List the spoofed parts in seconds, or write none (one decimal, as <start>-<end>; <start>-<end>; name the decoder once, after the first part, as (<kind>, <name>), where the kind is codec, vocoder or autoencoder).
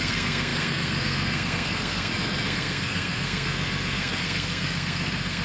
0.0-5.4 (codec, SNAC)